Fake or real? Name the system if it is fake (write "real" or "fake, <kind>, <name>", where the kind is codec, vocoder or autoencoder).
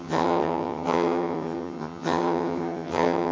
fake, vocoder, HiFi-GAN